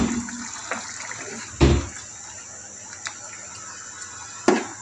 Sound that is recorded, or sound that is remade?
recorded